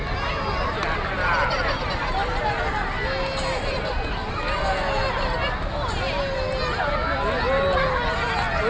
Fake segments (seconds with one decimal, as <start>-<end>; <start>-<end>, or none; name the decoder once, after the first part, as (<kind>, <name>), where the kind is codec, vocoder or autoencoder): none

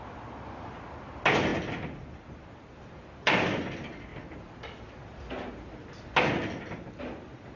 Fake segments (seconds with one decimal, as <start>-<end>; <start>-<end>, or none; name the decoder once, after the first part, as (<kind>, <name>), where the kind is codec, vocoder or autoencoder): none

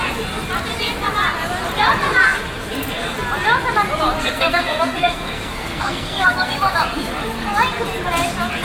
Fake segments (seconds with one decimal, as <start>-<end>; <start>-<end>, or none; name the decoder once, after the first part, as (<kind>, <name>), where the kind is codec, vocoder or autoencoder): 4.2-6.8 (codec, SNAC)

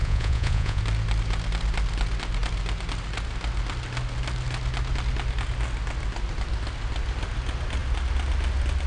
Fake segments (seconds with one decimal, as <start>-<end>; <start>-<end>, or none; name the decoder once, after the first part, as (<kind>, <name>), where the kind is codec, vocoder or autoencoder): 0.0-0.8 (vocoder, Vocos)